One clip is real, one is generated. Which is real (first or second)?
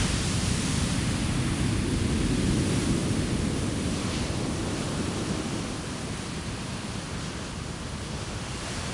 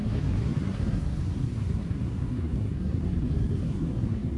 first